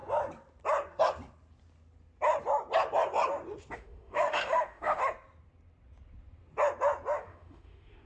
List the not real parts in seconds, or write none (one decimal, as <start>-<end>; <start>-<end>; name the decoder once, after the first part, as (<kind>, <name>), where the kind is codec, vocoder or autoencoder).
3.7-5.0 (autoencoder, DAC-VAE); 7.2-8.1